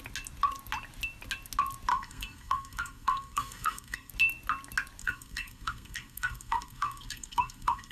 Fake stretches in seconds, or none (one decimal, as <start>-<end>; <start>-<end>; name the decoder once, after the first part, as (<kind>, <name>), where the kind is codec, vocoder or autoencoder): 1.9-4.1 (codec, SNAC); 5.0-7.9